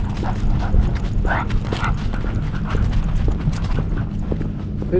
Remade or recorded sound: recorded